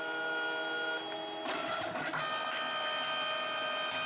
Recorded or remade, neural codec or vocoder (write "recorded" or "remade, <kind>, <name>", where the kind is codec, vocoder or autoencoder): recorded